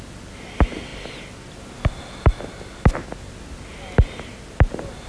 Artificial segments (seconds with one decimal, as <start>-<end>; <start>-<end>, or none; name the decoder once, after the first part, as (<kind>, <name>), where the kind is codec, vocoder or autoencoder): none